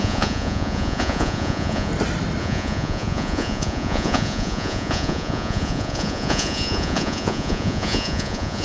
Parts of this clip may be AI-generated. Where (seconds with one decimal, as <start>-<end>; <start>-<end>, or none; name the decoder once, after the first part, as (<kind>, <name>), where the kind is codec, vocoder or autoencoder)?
0.0-1.9 (vocoder, Vocos); 2.4-8.6